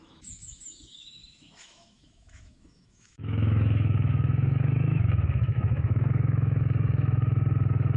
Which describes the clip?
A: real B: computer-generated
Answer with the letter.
B